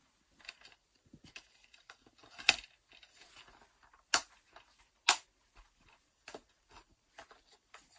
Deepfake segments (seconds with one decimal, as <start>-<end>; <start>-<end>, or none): none